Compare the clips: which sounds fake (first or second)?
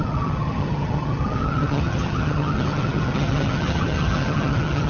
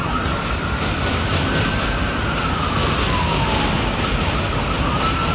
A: first